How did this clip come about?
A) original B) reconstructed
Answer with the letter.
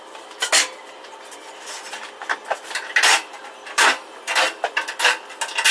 A